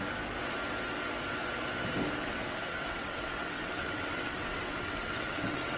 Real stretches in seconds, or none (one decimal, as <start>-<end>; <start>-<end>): 0.0-2.2